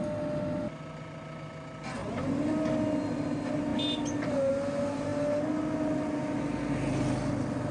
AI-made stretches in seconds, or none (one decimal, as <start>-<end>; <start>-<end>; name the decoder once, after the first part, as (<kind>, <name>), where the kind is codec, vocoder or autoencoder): none